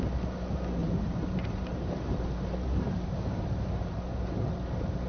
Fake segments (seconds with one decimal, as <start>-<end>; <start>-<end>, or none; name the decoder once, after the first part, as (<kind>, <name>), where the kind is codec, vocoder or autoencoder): 0.8-3.9 (vocoder, BigVGAN v2)